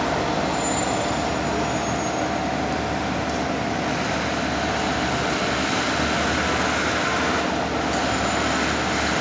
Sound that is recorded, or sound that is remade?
recorded